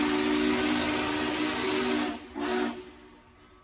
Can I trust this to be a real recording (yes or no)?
yes